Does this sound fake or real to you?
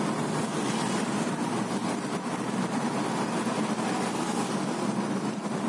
real